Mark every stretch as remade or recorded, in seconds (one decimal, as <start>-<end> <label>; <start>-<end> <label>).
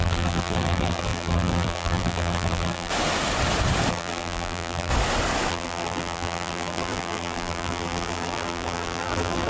0.0-2.9 remade; 2.9-3.9 recorded; 3.9-4.9 remade; 4.9-5.5 recorded; 5.5-9.5 remade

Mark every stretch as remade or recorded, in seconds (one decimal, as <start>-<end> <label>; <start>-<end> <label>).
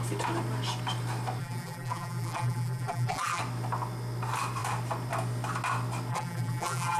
0.0-1.4 recorded; 1.4-3.4 remade; 3.4-6.1 recorded; 6.1-7.0 remade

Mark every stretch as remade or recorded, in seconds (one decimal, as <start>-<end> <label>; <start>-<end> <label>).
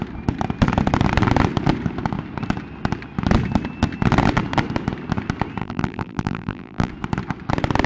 0.0-5.6 recorded; 5.6-6.9 remade; 6.9-7.9 recorded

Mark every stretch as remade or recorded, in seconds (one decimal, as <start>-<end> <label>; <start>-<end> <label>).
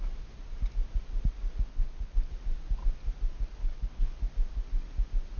0.0-1.7 recorded; 1.7-2.3 remade; 2.3-3.6 recorded; 3.6-4.2 remade; 4.2-5.4 recorded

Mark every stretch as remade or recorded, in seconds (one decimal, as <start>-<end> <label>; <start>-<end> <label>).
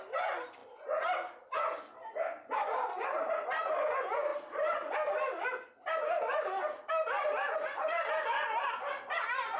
0.0-9.6 recorded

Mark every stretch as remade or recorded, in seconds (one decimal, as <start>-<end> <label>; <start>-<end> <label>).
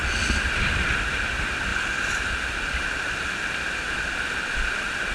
0.0-0.6 remade; 0.6-5.1 recorded